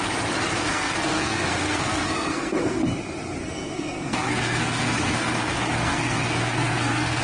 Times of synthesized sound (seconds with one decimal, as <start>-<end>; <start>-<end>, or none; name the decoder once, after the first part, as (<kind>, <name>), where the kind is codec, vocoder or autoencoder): 0.6-2.8 (codec, SNAC); 3.4-7.2